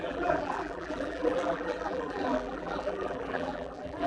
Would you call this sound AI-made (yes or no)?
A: yes